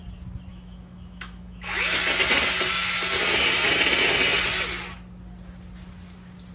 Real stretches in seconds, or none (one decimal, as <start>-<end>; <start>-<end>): 0.0-0.5; 2.0-6.5